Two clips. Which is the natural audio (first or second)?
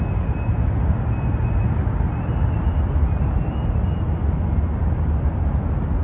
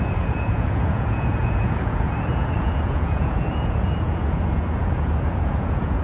first